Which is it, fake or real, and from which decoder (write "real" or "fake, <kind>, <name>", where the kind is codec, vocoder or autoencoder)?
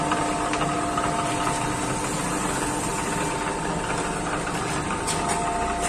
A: real